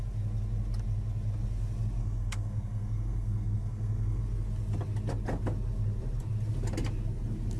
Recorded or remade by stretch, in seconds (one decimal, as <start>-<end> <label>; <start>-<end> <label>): 0.0-2.0 recorded; 2.0-4.2 remade; 4.2-7.6 recorded